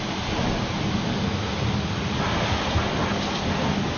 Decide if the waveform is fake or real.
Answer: real